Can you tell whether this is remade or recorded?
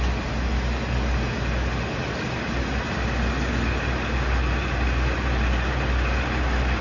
recorded